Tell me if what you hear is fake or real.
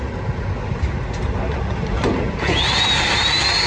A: real